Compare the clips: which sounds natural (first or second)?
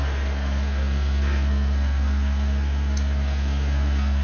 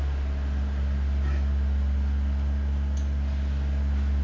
second